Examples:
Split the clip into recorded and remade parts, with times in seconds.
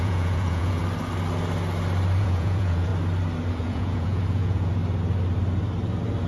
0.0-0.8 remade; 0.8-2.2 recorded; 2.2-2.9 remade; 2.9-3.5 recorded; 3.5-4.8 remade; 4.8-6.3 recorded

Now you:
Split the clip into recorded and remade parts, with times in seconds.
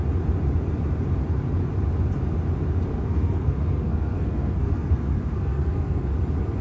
0.0-2.9 recorded; 2.9-6.1 remade; 6.1-6.6 recorded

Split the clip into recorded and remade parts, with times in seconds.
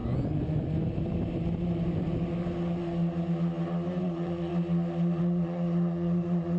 0.0-4.0 recorded; 4.0-4.5 remade; 4.5-5.2 recorded; 5.2-6.6 remade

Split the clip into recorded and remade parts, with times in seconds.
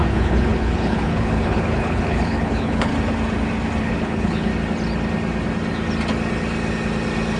0.0-2.9 remade; 2.9-3.8 recorded; 3.8-4.5 remade; 4.5-7.4 recorded